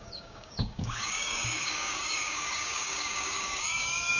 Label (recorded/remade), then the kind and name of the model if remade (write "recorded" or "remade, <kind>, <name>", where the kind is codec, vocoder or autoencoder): remade, codec, DAC